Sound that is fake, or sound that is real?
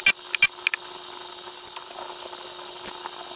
real